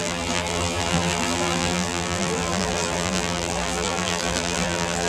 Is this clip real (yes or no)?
no